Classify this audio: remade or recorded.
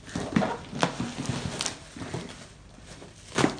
recorded